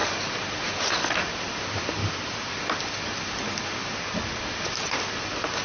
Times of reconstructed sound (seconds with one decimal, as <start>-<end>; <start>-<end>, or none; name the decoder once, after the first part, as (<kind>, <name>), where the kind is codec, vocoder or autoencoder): 2.0-2.6 (vocoder, BigVGAN v2)